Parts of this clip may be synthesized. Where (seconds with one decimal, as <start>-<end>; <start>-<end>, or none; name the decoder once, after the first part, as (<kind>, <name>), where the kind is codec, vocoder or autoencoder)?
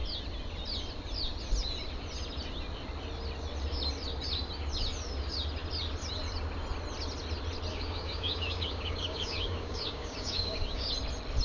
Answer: 7.7-10.9 (codec, DAC)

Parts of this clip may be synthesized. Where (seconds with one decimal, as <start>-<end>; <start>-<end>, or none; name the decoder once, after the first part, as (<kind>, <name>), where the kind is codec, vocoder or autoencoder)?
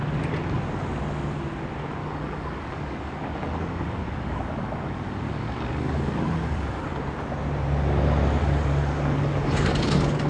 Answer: 2.0-7.0 (codec, DAC); 8.4-10.3